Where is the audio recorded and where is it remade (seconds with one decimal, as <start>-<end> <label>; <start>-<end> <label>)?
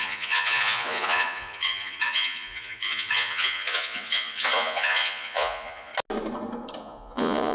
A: 0.0-5.9 remade; 5.9-6.8 recorded; 6.8-7.5 remade